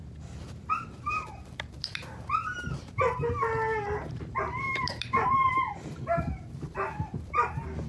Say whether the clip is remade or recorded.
remade